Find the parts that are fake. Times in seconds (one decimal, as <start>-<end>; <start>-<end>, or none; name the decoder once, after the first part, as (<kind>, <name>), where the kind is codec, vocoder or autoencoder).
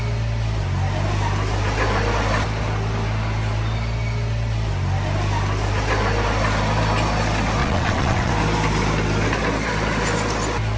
7.6-8.3 (vocoder, WaveNeXt)